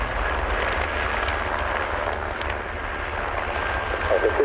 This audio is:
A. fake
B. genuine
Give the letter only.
B